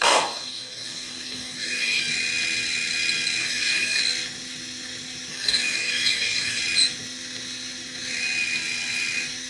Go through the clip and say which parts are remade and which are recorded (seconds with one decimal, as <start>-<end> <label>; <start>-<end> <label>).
0.0-2.0 remade; 2.0-3.4 recorded; 3.4-4.0 remade; 4.0-5.3 recorded; 5.3-6.6 remade; 6.6-9.5 recorded